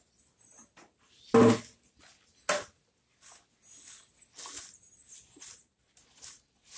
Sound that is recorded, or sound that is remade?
recorded